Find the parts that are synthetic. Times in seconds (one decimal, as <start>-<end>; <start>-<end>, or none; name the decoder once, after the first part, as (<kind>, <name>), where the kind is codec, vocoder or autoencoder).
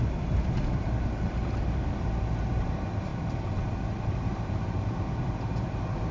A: 0.0-3.1 (vocoder, BigVGAN v2); 4.1-6.1